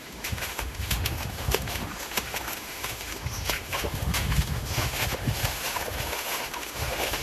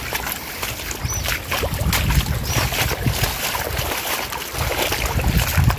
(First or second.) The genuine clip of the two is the second